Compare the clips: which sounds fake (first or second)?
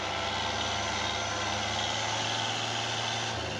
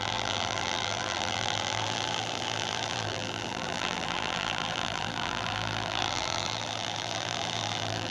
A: second